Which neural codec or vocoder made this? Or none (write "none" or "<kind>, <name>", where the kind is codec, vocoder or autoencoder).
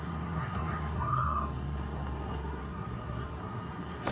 codec, SNAC